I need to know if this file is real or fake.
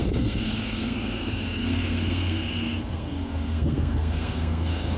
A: fake